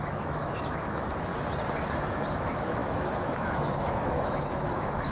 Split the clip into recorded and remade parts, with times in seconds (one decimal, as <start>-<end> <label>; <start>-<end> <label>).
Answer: 0.0-1.3 remade; 1.3-2.4 recorded; 2.4-5.1 remade